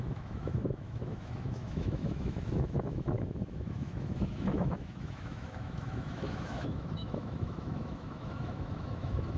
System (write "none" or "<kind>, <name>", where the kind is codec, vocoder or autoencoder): autoencoder, DAC-VAE